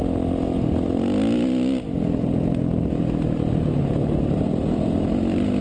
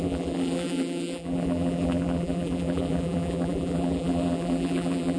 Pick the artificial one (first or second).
second